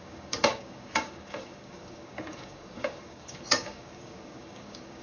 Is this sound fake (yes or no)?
yes